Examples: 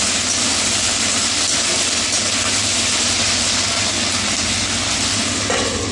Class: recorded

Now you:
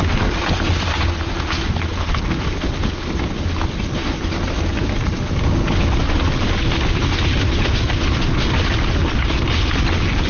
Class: recorded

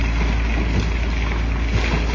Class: recorded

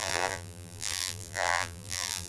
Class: remade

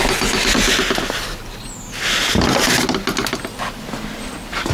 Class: recorded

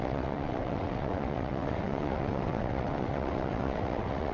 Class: remade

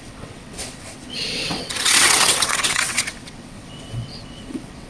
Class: remade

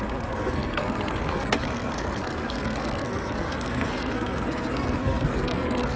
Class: remade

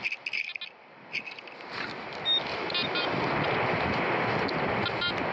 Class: recorded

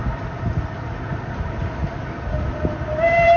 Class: recorded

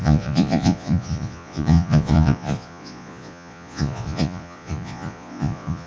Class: remade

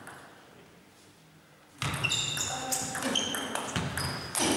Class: recorded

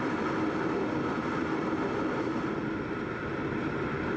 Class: recorded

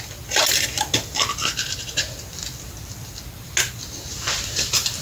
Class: recorded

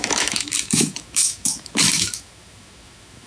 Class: remade